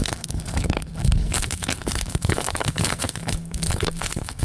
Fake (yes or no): yes